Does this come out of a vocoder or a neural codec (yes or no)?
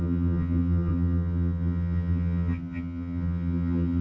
yes